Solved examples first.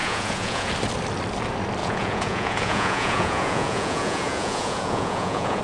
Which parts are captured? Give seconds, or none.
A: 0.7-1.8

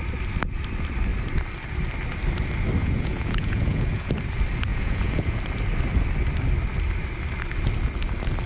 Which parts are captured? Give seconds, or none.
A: 0.0-2.8; 4.1-4.7; 5.4-8.5

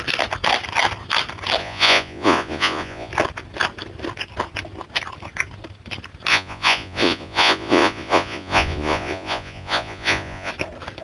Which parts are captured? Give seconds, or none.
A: 0.0-1.6; 3.1-6.3; 10.5-11.0

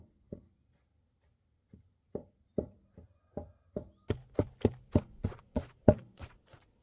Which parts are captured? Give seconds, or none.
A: 0.9-5.0

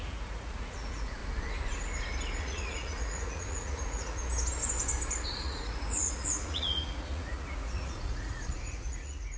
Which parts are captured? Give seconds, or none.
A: 1.2-2.4; 4.2-5.3

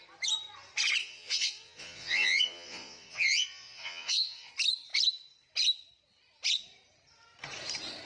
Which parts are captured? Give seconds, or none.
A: 0.0-1.0; 4.5-8.1

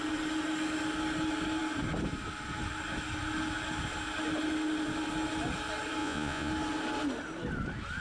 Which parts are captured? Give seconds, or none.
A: 0.0-6.0; 6.5-8.0

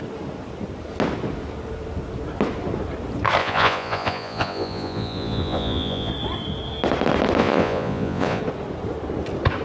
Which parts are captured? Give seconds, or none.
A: 0.0-3.4; 6.1-7.4; 8.4-9.6